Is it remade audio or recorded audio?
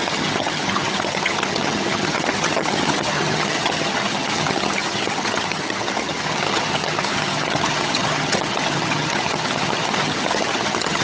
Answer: remade